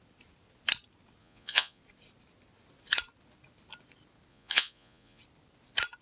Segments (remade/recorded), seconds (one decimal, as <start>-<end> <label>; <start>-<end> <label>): 0.0-1.2 recorded; 1.2-1.8 remade; 1.8-4.3 recorded; 4.3-5.2 remade; 5.2-6.0 recorded